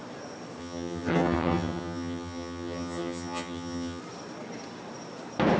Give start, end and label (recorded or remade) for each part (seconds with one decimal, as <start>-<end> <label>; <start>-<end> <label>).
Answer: 0.0-0.6 recorded; 0.6-4.0 remade; 4.0-5.6 recorded